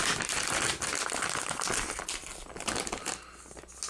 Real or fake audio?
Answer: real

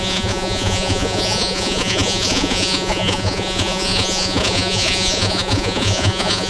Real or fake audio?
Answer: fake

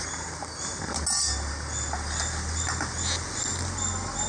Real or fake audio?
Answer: real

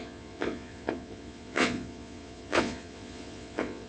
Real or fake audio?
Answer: fake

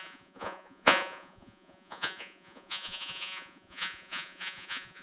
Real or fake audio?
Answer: fake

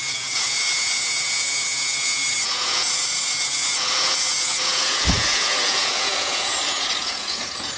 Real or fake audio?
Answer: fake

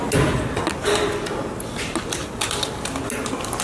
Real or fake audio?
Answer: real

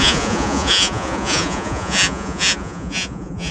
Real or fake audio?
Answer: fake